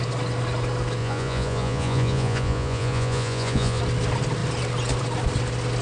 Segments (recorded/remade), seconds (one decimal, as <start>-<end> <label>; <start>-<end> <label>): 0.0-1.0 recorded; 1.0-3.8 remade; 3.8-5.8 recorded